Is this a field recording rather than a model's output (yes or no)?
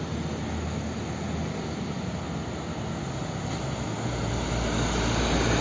yes